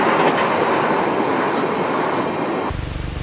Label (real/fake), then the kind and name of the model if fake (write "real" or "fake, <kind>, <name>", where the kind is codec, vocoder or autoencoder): real